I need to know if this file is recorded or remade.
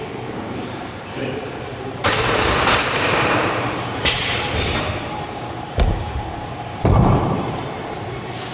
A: remade